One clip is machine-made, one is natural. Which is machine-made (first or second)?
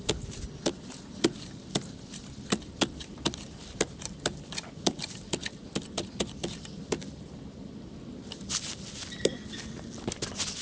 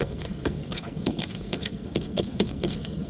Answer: second